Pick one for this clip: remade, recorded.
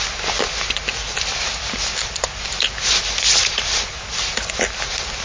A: recorded